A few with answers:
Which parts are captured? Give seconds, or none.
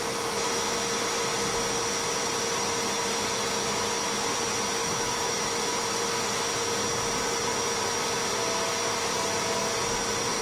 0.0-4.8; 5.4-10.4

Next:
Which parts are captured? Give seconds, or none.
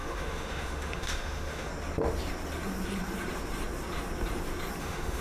1.7-4.8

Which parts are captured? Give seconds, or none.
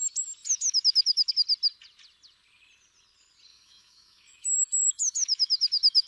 0.0-0.4; 1.3-3.5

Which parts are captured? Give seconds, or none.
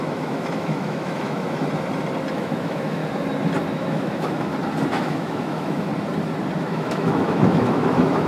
1.6-2.3; 3.0-3.7; 4.5-5.0; 5.9-6.6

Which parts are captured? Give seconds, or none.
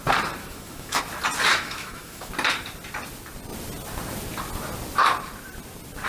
0.0-0.4; 1.0-1.5; 2.3-6.1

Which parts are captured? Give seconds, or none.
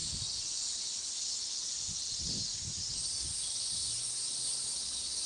0.0-5.3